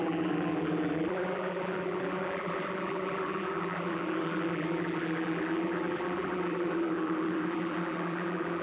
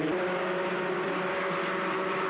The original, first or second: second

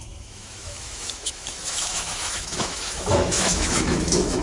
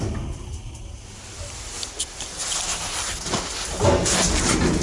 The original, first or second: second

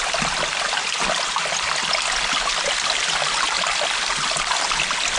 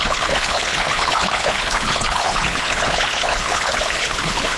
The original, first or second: first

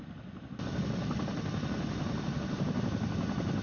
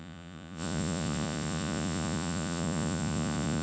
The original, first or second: first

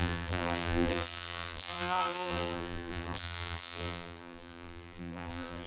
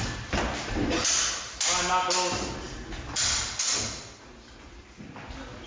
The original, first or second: second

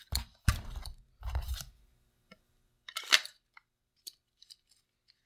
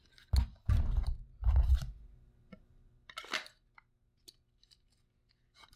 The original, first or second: second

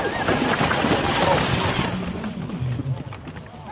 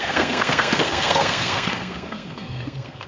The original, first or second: first